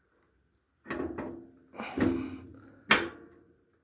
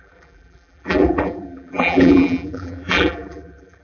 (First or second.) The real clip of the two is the first